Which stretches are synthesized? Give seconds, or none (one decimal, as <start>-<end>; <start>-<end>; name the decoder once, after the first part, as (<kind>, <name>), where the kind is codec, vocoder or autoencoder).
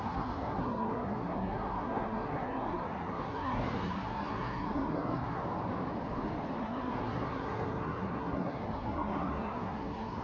0.0-5.4 (codec, SNAC); 6.6-10.2